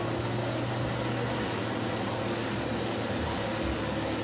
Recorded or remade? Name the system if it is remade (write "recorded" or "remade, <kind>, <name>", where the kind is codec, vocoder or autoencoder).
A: recorded